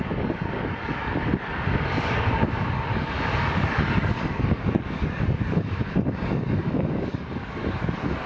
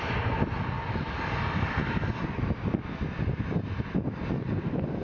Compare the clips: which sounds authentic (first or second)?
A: second